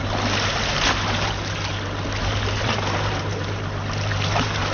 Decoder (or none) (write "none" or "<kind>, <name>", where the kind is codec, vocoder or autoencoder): none